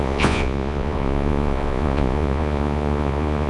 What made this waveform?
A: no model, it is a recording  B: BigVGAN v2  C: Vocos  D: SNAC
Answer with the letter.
C